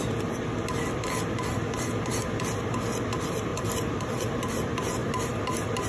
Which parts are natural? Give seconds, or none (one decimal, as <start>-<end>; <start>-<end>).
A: 0.0-5.9

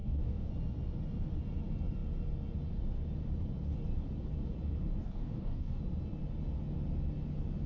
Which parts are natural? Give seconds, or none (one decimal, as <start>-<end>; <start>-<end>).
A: 0.5-5.0; 5.8-7.7